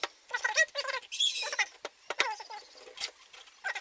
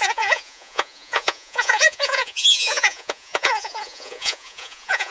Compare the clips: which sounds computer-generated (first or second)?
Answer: second